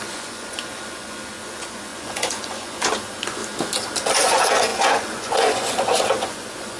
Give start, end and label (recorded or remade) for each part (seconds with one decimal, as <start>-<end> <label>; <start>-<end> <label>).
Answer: 0.0-3.4 remade; 3.4-4.1 recorded; 4.1-6.8 remade